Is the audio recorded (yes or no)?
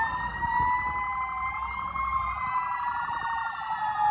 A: yes